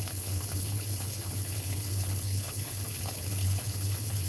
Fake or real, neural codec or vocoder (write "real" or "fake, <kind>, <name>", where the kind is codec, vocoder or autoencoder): fake, codec, HILCodec